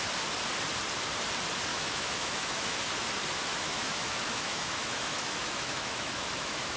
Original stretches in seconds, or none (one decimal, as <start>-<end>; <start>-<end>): 0.0-1.7; 2.9-3.5